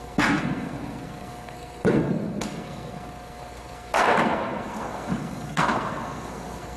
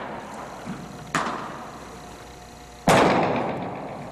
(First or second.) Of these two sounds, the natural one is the second